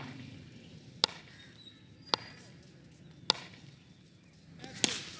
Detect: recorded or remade recorded